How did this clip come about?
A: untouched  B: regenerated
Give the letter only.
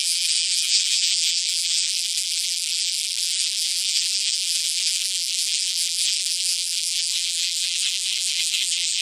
B